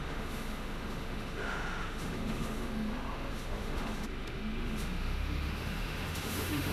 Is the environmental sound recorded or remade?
remade